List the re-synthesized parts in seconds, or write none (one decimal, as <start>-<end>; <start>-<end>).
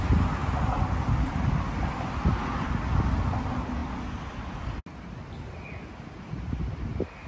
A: none